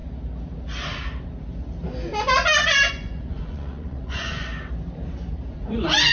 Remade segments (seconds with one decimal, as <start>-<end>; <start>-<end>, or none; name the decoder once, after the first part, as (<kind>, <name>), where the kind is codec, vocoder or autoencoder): 2.9-4.5 (vocoder, Vocos); 5.5-6.1